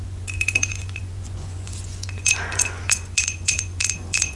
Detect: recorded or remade remade